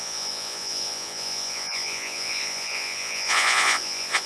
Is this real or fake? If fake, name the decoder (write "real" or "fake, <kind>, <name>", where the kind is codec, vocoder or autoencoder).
fake, vocoder, Vocos